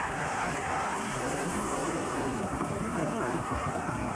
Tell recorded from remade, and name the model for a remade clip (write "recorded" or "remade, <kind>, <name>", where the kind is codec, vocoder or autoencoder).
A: remade, codec, SNAC